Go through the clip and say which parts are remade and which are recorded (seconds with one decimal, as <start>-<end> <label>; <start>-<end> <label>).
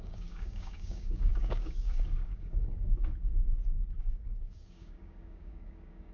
0.0-3.4 remade; 3.4-4.0 recorded; 4.0-6.1 remade